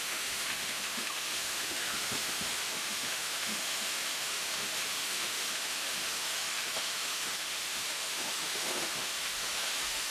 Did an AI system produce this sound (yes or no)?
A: yes